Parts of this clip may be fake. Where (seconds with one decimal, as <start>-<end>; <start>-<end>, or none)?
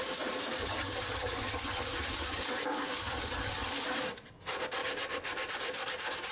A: 0.6-2.4; 3.0-3.7